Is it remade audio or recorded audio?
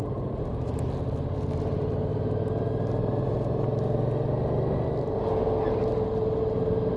recorded